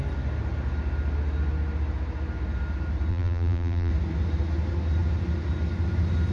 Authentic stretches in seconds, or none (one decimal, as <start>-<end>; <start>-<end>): 0.0-3.1; 3.9-6.3